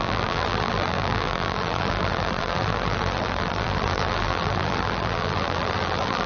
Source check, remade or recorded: remade